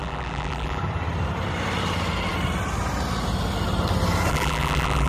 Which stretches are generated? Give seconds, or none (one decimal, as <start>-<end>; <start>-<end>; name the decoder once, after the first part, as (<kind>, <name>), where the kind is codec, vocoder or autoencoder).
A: 0.0-0.8 (vocoder, BigVGAN v2); 4.3-5.1

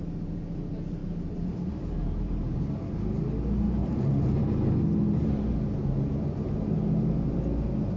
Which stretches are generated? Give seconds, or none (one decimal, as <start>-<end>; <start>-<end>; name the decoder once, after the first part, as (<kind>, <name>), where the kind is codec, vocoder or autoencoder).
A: 1.0-2.6 (vocoder, BigVGAN v2); 3.8-4.5

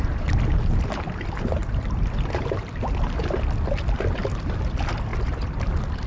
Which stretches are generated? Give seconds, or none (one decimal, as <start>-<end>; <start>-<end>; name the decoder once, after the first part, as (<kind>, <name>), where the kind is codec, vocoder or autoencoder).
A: 0.0-0.7 (vocoder, BigVGAN v2); 1.6-4.2; 5.1-6.1

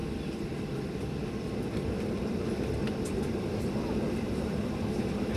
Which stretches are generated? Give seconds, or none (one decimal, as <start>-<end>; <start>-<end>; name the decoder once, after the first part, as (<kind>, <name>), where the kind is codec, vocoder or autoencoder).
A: 0.0-3.2 (vocoder, BigVGAN v2)

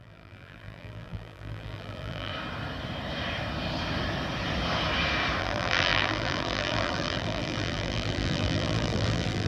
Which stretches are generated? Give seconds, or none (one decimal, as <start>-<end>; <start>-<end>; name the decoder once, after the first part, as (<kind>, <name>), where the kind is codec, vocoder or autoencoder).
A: 0.0-2.3 (vocoder, BigVGAN v2); 5.4-9.5